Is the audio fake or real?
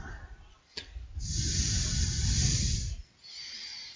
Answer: real